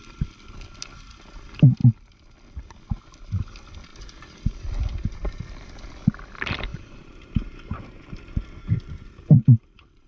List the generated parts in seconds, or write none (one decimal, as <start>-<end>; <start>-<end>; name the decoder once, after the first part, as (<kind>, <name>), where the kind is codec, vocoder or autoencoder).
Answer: 3.9-4.6 (vocoder, BigVGAN v2); 6.7-10.1